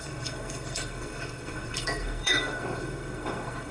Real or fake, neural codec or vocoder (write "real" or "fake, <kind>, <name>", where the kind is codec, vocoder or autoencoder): fake, codec, SNAC